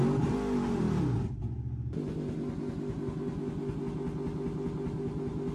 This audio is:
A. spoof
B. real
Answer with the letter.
B